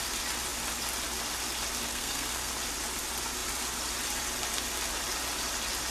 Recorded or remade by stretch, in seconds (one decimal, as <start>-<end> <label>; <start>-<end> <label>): 0.0-1.9 recorded; 1.9-2.5 remade; 2.5-5.9 recorded